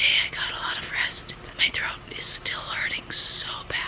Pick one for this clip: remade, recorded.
recorded